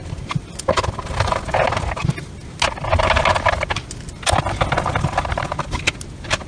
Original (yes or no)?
yes